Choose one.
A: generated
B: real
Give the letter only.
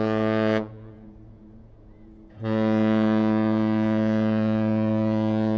A